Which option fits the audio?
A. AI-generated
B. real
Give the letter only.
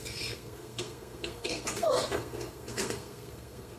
A